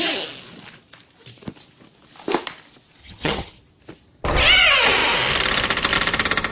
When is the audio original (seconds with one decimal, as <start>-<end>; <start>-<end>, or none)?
0.0-3.0; 3.6-6.5